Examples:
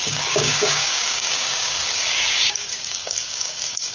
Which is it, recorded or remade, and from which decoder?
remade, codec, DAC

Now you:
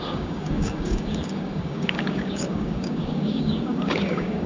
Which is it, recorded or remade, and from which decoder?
remade, codec, DAC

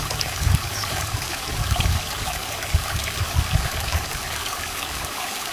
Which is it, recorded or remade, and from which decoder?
remade, codec, DAC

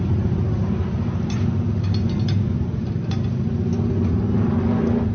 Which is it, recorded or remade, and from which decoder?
recorded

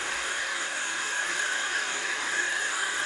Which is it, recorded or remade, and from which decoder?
remade, codec, DAC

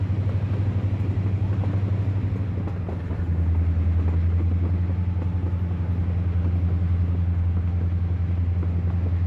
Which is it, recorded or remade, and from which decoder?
recorded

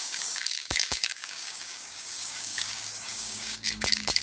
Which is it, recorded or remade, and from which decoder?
remade, codec, DAC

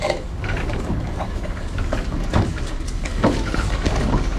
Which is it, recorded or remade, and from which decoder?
remade, codec, DAC